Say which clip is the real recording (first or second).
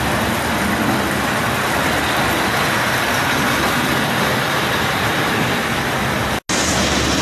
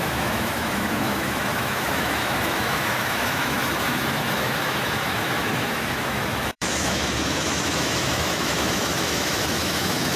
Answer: first